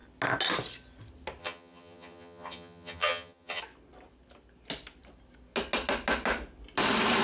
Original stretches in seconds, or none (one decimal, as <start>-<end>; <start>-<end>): 0.0-1.4; 3.6-7.2